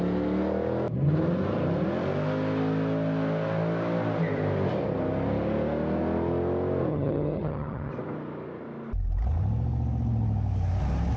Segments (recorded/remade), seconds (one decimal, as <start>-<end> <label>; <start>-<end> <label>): 0.0-6.9 recorded; 6.9-7.9 remade; 7.9-11.2 recorded